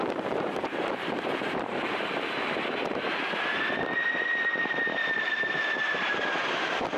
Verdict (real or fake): fake